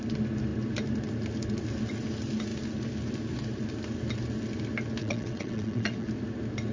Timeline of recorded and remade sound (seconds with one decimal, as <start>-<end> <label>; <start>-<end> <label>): 0.0-5.0 recorded; 5.0-6.1 remade; 6.1-6.7 recorded

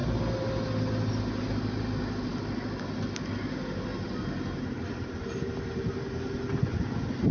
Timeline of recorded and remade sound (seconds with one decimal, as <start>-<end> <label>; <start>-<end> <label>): 0.0-7.3 recorded

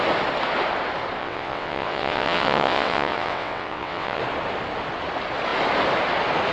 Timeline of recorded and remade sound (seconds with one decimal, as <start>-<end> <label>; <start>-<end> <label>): 0.0-1.2 recorded; 1.2-4.2 remade; 4.2-6.5 recorded

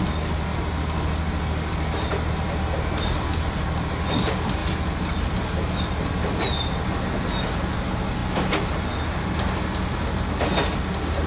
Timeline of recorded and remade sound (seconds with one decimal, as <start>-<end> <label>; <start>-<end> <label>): 0.0-11.3 recorded